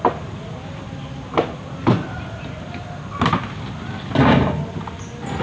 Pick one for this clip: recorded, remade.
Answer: recorded